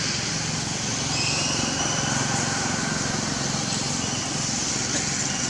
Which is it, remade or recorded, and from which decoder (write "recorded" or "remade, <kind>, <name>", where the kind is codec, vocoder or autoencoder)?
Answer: recorded